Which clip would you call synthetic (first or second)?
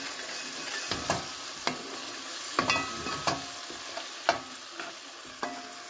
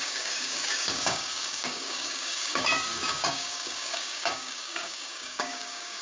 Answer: second